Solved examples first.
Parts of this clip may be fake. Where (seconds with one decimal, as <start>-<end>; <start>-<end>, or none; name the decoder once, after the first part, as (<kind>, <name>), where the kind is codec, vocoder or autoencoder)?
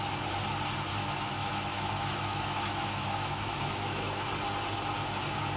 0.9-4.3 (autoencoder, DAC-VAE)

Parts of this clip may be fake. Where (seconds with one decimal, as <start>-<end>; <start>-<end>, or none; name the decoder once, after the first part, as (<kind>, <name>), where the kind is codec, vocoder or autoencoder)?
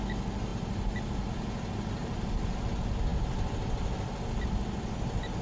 0.5-1.3 (vocoder, BigVGAN v2); 2.0-2.7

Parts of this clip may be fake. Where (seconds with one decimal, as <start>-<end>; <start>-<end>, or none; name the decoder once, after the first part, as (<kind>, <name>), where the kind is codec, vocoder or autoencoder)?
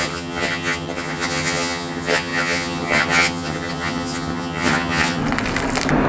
0.0-5.2 (vocoder, HiFi-GAN)